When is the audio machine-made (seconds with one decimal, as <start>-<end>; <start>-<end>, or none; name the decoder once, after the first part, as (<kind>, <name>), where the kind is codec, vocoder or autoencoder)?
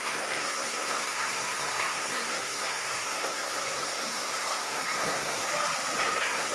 0.0-5.5 (codec, SNAC); 6.0-6.5